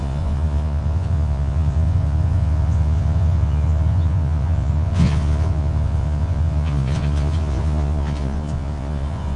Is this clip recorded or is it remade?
remade